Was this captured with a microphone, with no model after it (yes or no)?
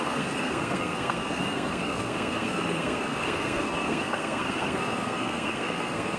no